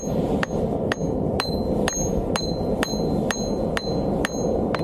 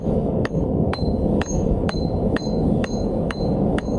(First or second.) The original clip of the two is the first